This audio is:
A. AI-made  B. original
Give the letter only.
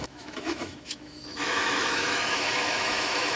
A